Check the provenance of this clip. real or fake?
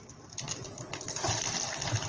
real